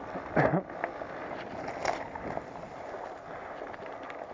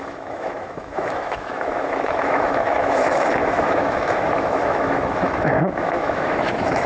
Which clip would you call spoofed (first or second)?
second